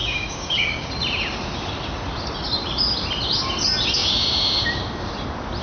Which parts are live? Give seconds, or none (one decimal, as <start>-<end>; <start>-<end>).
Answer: 0.9-5.6